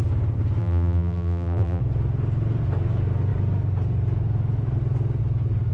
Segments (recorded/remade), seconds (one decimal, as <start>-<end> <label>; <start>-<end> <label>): 0.0-0.6 recorded; 0.6-1.8 remade; 1.8-5.7 recorded